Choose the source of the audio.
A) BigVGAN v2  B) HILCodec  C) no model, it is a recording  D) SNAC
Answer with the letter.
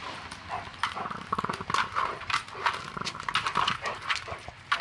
C